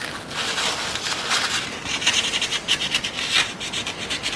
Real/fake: real